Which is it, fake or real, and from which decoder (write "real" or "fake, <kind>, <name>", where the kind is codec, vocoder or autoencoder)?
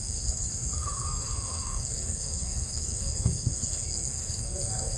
fake, codec, SNAC